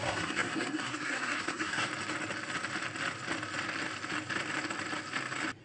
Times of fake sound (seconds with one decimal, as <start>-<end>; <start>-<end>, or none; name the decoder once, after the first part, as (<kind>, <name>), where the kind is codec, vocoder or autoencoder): 0.0-1.9 (codec, SNAC)

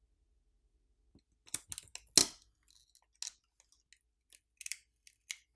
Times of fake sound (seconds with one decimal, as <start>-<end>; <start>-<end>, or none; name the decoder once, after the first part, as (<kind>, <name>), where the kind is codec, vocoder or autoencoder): none

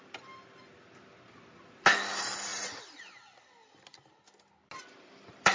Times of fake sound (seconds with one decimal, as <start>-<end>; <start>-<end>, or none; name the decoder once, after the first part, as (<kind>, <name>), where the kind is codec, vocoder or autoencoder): none

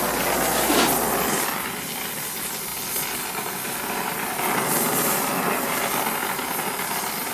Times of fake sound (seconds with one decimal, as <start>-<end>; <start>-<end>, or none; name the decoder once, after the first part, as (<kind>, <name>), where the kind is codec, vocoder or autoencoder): none

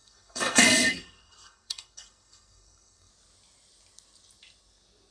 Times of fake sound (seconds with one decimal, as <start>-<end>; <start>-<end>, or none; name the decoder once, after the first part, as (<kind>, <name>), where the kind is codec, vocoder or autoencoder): 0.0-3.1 (codec, SNAC)

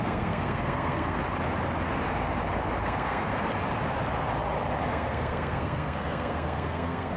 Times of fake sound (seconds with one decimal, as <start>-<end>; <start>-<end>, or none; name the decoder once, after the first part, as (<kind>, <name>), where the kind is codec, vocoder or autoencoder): 0.0-1.2 (codec, SNAC); 2.8-3.3; 4.9-7.2